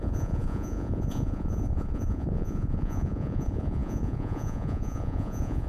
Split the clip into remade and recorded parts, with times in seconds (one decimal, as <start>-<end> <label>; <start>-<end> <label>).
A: 0.0-5.7 remade